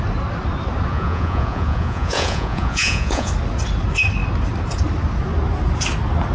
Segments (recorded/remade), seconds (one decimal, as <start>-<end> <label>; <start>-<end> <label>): 0.0-0.9 recorded; 0.9-3.3 remade; 3.3-6.3 recorded